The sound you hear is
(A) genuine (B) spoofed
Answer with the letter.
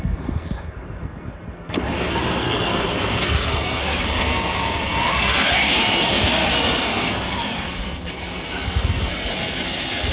B